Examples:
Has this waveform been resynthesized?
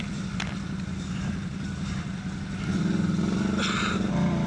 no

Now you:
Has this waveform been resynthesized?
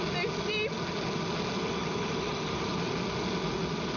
no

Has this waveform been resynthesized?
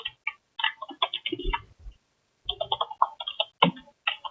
no